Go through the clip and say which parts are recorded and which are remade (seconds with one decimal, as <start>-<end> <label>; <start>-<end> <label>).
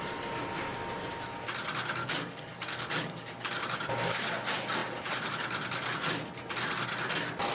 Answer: 0.0-2.0 recorded; 2.0-3.6 remade; 3.6-7.5 recorded